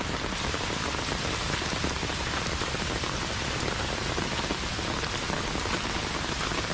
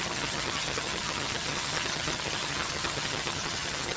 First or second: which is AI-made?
second